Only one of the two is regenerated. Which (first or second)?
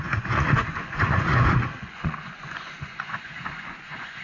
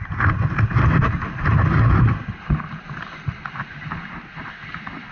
first